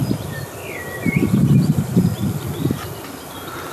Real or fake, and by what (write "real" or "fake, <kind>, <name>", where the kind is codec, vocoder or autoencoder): real